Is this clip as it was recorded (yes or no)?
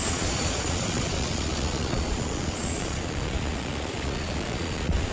no